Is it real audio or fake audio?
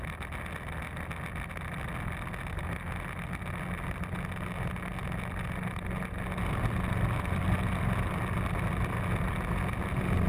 real